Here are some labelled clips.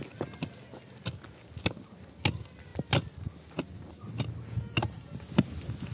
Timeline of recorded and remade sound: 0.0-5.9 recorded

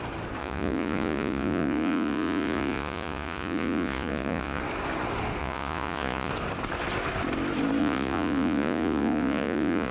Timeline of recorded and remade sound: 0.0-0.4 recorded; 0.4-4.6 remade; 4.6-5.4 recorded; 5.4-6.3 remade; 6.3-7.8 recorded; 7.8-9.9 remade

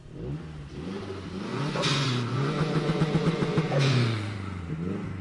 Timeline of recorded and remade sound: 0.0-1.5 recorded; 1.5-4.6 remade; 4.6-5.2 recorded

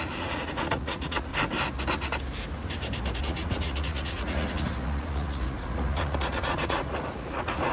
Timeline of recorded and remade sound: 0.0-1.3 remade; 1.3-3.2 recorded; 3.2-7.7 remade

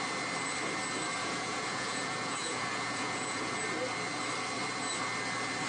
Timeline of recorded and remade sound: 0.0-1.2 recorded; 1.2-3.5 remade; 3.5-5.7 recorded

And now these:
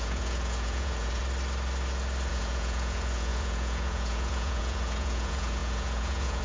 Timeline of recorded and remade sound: 0.0-1.2 remade; 1.2-2.3 recorded; 2.3-6.4 remade

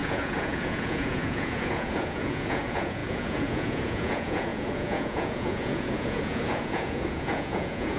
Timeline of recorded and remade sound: 0.0-8.0 remade

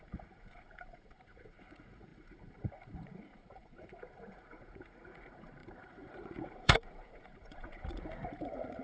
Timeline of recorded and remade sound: 0.0-8.8 remade